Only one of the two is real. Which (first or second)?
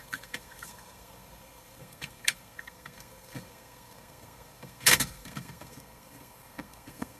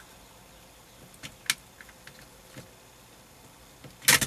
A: second